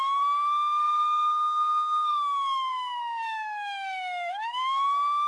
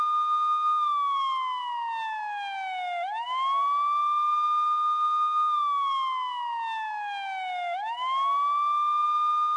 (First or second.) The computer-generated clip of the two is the first